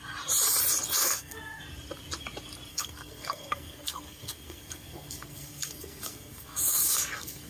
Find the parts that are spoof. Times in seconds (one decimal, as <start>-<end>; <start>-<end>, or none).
1.0-1.6; 2.7-7.5